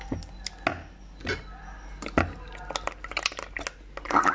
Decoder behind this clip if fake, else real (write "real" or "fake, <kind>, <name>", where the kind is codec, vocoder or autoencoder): real